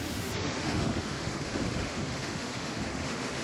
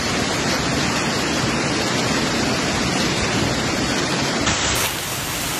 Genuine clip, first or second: second